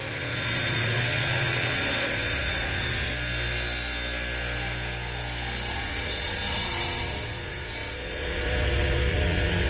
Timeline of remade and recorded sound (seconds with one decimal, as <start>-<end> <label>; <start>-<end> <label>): 0.0-3.1 remade; 3.1-5.7 recorded; 5.7-9.7 remade

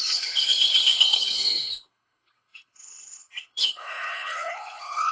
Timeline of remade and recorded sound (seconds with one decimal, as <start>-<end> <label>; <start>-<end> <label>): 0.0-5.1 remade

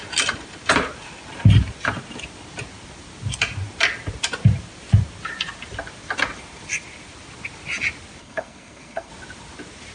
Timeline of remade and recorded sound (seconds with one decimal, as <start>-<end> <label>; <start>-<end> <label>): 0.0-8.2 recorded; 8.2-9.1 remade; 9.1-9.9 recorded

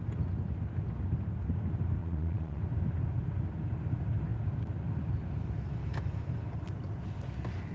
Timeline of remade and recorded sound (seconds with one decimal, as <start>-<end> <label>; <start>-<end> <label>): 0.0-2.0 recorded; 2.0-2.6 remade; 2.6-7.7 recorded

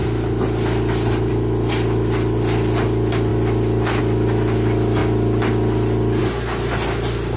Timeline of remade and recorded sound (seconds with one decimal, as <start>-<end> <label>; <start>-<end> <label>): 0.0-7.4 recorded